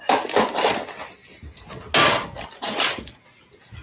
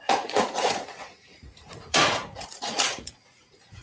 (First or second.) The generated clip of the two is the second